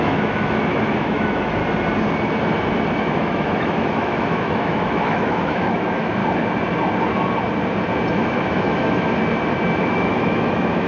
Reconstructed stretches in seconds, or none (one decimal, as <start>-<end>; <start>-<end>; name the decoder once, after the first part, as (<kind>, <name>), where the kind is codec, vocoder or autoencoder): 0.0-1.6 (autoencoder, DAC-VAE); 3.0-6.2; 8.1-9.2; 9.8-10.9